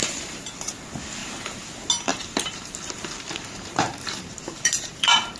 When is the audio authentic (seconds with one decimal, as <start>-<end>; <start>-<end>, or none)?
0.7-1.2; 1.7-2.1